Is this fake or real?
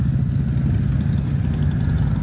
real